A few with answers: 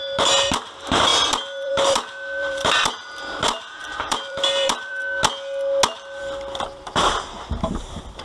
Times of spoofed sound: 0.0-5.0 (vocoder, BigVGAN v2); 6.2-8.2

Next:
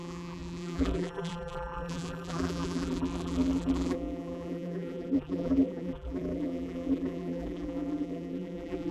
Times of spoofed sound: 0.0-8.9 (vocoder, BigVGAN v2)

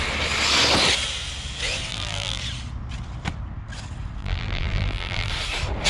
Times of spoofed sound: 1.9-2.4 (vocoder, BigVGAN v2); 4.2-5.3

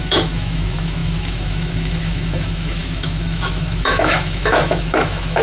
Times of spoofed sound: 0.0-5.4 (autoencoder, DAC-VAE)

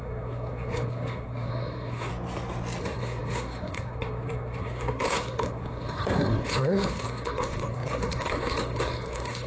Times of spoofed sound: 0.0-2.1 (codec, SNAC); 2.8-9.5

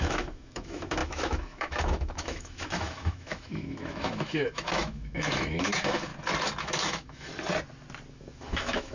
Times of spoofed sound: 0.0-6.1 (autoencoder, DAC-VAE); 6.6-7.3; 8.1-8.9

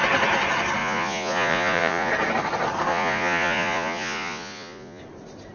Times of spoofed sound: 0.8-2.1 (vocoder, Vocos); 2.9-5.0